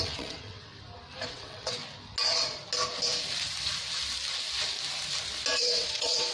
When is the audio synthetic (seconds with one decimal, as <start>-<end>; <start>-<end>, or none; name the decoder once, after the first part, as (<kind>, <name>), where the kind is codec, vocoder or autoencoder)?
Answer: 0.0-0.7 (vocoder, WaveNeXt); 1.3-1.8; 5.6-6.3